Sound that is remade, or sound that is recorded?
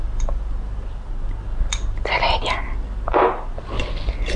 recorded